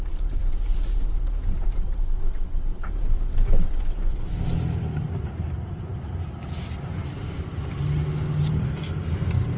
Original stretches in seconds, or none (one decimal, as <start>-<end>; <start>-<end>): 0.0-9.6